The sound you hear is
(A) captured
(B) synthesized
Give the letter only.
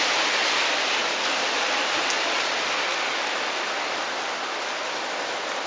A